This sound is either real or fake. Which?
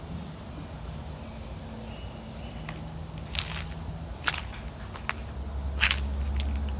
real